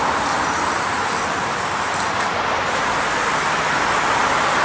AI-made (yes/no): no